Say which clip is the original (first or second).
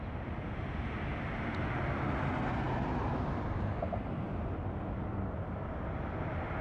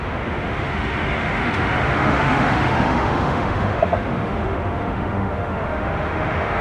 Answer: first